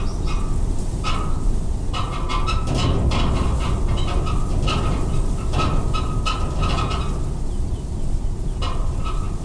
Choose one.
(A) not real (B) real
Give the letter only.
B